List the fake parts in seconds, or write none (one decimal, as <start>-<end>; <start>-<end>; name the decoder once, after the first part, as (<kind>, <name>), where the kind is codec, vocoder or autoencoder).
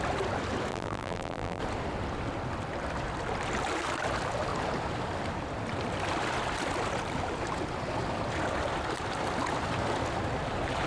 0.7-1.6 (vocoder, BigVGAN v2)